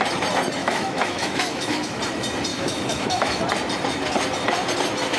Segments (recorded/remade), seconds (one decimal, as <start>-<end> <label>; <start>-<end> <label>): 0.0-0.6 recorded; 0.6-2.0 remade; 2.0-2.5 recorded; 2.5-3.4 remade; 3.4-5.2 recorded